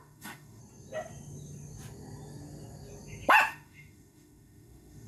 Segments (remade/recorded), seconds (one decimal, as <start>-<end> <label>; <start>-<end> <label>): 0.0-0.6 remade; 0.6-3.5 recorded; 3.5-5.1 remade